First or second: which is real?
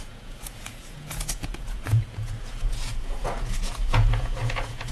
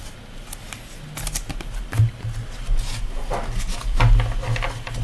second